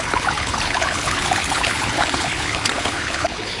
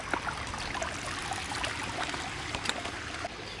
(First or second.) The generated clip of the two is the first